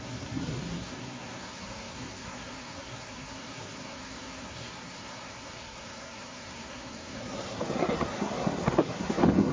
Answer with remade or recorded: remade